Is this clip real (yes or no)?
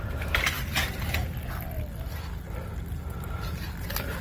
yes